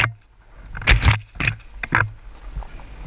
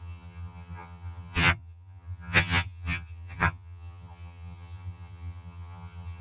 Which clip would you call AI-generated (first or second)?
second